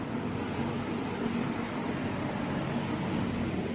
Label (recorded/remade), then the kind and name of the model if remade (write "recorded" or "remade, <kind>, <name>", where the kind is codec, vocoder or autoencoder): recorded